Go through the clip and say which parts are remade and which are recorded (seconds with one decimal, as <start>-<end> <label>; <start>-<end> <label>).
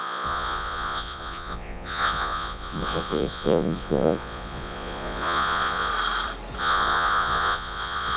0.0-5.9 remade; 5.9-6.6 recorded; 6.6-8.2 remade